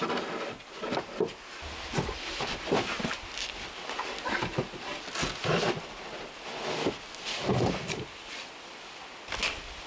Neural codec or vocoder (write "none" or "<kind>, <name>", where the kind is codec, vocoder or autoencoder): none